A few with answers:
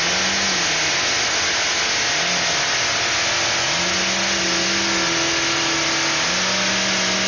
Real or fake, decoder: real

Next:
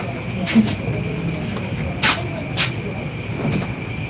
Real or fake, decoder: real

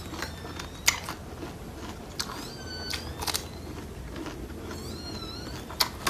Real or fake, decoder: real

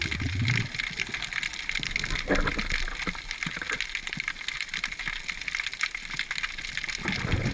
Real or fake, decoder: real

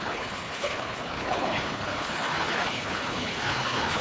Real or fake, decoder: fake, codec, HILCodec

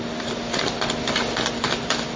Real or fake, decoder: real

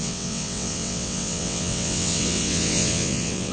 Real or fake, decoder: fake, vocoder, WaveNeXt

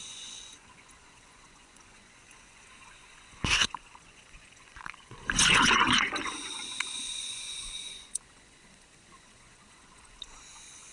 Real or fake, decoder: fake, vocoder, Vocos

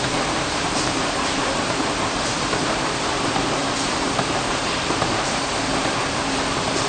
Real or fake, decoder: fake, vocoder, BigVGAN v2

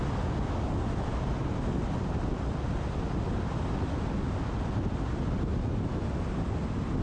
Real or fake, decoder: real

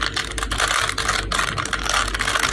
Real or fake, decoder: real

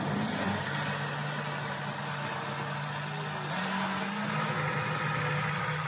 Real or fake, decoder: real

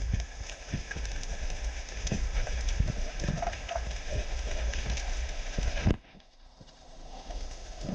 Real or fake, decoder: fake, autoencoder, DAC-VAE